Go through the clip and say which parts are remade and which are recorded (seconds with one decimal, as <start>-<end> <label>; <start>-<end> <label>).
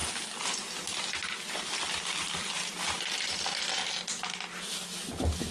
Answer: 0.0-5.5 recorded